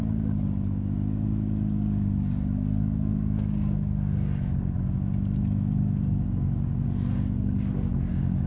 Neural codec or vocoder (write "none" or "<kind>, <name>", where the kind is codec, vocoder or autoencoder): codec, DAC